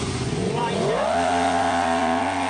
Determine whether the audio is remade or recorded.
remade